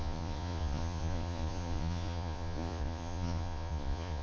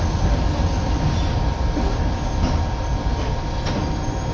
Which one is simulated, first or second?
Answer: first